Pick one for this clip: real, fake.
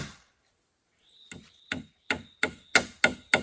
real